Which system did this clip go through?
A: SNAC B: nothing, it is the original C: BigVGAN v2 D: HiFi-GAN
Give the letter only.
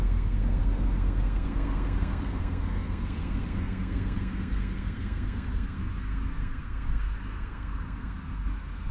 A